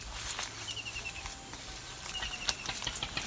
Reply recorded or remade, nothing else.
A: recorded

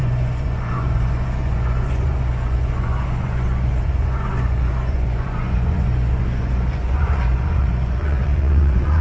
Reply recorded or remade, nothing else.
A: remade